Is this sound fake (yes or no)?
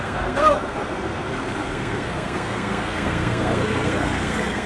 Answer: yes